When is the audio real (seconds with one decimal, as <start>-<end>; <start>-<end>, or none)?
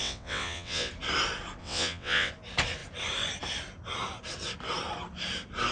0.9-1.6; 2.3-5.7